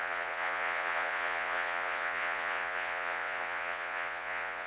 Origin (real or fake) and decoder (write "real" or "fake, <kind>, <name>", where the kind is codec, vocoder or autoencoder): fake, vocoder, Vocos